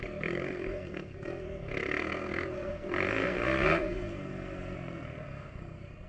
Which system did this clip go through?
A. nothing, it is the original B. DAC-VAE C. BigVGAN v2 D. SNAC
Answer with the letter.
D